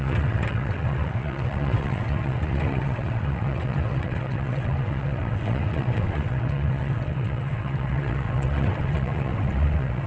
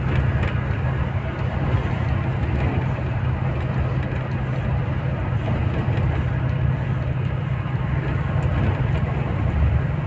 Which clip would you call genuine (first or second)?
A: second